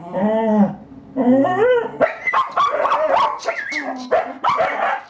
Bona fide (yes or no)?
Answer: yes